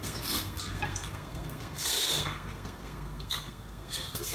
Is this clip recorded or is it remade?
remade